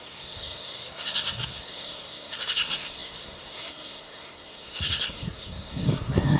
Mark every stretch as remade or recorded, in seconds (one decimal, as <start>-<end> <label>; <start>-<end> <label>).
0.0-6.4 remade

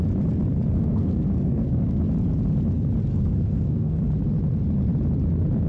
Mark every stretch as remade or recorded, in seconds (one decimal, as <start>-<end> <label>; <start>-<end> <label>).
0.0-0.7 recorded; 0.7-2.0 remade; 2.0-3.1 recorded; 3.1-4.0 remade; 4.0-5.7 recorded

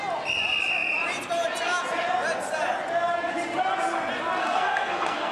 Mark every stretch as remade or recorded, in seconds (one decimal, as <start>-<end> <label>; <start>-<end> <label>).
0.0-4.4 recorded; 4.4-5.3 remade

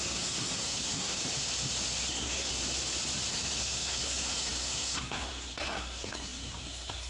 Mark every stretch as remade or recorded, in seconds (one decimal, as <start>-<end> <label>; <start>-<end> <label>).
0.0-1.2 remade; 1.2-2.1 recorded; 2.1-2.5 remade; 2.5-3.3 recorded; 3.3-7.1 remade

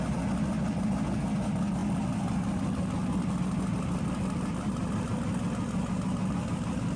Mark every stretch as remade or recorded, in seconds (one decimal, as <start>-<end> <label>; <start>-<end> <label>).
0.0-7.0 recorded

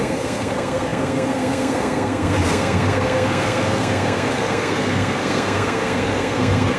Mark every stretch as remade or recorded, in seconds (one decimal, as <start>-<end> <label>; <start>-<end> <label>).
0.0-6.8 remade